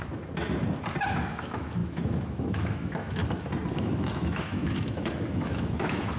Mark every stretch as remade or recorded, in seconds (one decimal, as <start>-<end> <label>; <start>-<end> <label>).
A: 0.0-1.2 recorded; 1.2-3.2 remade; 3.2-3.7 recorded; 3.7-6.2 remade